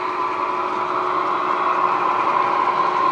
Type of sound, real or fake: real